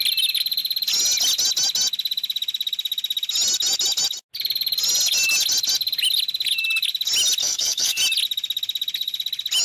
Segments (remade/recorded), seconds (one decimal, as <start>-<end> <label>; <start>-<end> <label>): 0.0-7.4 recorded; 7.4-8.0 remade; 8.0-9.6 recorded